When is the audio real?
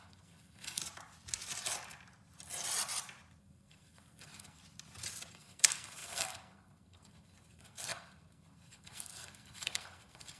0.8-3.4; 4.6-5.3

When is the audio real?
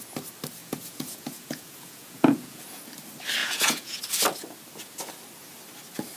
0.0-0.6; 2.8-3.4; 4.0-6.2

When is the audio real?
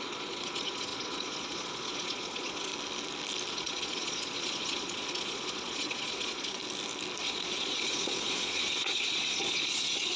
2.7-3.5; 6.6-7.2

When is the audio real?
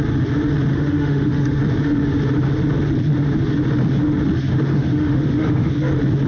0.0-0.7; 1.6-4.5; 5.7-6.3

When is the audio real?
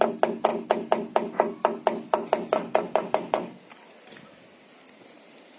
0.0-5.6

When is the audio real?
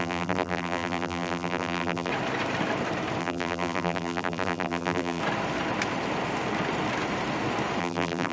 2.1-3.2; 5.2-7.8